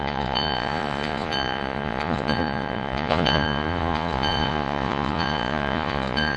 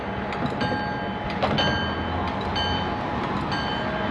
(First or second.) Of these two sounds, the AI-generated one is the first